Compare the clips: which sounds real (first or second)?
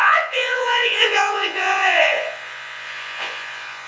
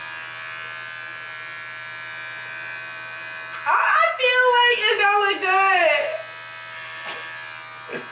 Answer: second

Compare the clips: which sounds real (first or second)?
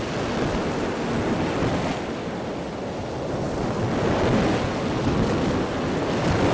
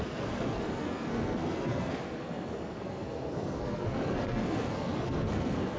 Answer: first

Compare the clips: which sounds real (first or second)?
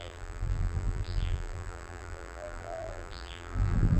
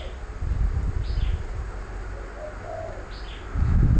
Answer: second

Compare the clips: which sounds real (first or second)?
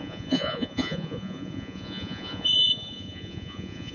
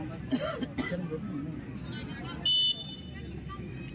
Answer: second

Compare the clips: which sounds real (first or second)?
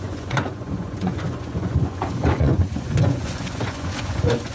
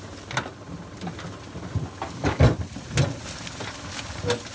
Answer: second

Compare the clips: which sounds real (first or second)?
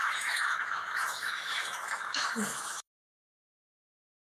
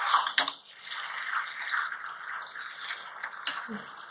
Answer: second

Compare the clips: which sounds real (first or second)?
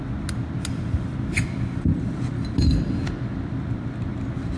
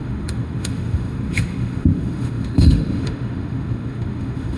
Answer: first